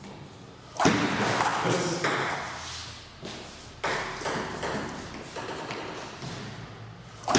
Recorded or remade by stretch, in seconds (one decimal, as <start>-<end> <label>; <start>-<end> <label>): 0.0-7.4 recorded